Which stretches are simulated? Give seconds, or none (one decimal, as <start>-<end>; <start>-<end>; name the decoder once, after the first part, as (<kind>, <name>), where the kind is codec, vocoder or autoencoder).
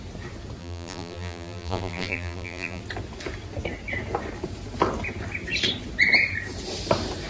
0.6-2.8 (vocoder, BigVGAN v2)